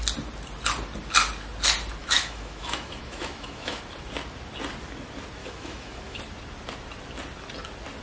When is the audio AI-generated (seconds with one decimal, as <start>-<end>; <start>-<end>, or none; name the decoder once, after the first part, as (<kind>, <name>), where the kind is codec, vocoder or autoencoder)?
2.0-3.8 (autoencoder, DAC-VAE); 5.4-6.2